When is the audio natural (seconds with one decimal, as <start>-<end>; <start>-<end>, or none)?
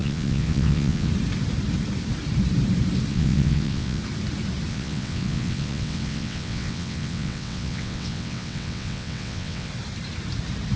1.1-3.1; 4.0-4.7; 9.7-10.8